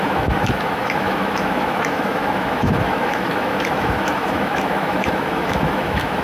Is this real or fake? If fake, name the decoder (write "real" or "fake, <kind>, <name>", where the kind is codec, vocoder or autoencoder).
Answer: fake, autoencoder, DAC-VAE